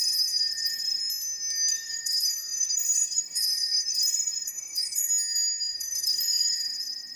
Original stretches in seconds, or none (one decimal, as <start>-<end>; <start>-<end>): 1.0-1.7; 5.1-5.6